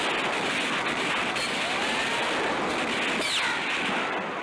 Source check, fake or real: real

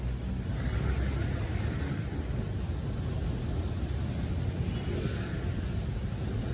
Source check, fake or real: real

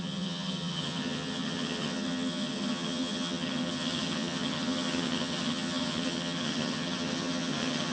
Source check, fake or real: fake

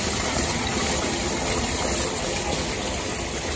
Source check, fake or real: real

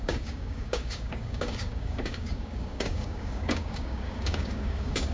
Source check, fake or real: fake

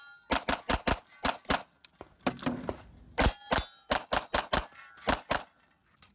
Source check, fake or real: real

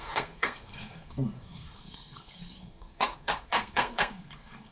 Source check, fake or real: fake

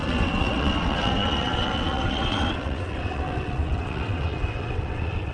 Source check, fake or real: fake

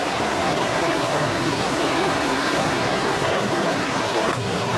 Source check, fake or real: fake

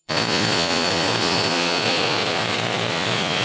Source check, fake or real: fake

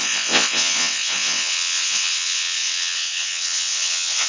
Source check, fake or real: fake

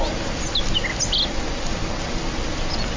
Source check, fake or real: real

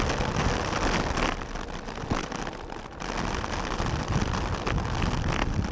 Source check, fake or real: real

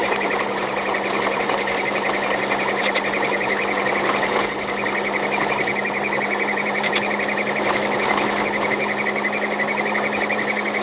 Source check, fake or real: real